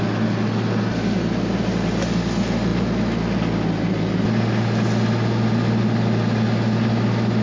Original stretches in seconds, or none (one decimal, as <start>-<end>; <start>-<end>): 0.0-7.4